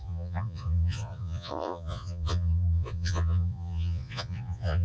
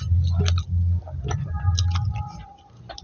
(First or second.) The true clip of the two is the second